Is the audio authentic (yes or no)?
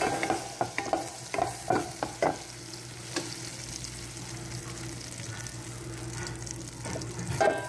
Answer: yes